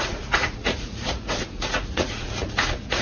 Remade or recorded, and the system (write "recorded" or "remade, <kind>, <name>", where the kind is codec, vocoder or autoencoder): remade, vocoder, Vocos